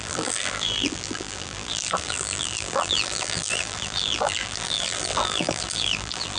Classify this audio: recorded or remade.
remade